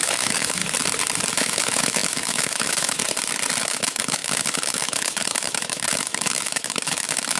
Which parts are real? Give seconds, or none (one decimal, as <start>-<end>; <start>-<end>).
0.6-1.3; 3.0-3.6